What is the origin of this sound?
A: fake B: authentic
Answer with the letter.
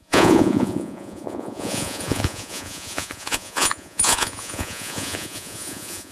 A